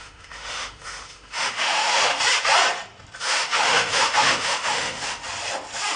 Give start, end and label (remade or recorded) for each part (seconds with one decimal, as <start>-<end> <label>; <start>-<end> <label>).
0.0-2.1 remade; 2.1-3.2 recorded; 3.2-5.2 remade; 5.2-6.0 recorded